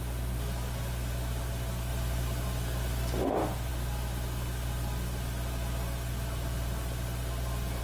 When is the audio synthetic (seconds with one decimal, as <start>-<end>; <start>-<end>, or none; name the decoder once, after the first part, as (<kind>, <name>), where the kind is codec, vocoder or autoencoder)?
none